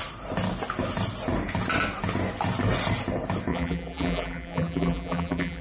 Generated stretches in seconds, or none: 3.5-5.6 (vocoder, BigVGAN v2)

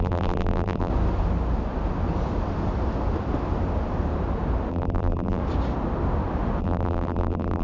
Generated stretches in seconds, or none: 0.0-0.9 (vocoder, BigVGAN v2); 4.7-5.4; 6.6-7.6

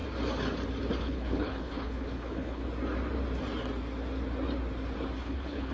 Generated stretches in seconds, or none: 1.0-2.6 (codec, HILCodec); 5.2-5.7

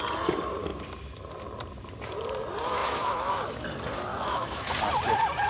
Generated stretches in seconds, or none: 2.8-3.3 (autoencoder, DAC-VAE); 4.1-4.7